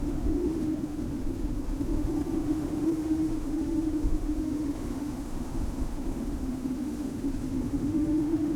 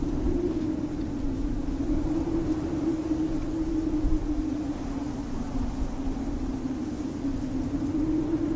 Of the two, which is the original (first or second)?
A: second